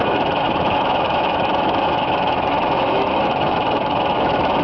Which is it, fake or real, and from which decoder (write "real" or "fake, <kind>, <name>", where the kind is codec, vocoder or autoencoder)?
fake, autoencoder, DAC-VAE